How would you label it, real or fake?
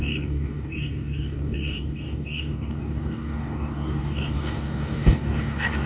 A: fake